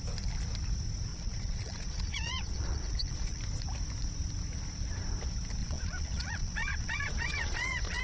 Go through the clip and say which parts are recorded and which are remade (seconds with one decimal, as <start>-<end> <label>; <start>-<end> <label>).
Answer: 0.0-1.1 recorded; 1.1-3.4 remade; 3.4-5.6 recorded; 5.6-8.0 remade